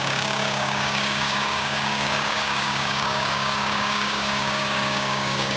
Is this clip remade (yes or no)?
yes